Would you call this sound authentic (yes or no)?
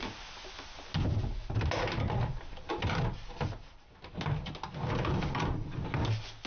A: yes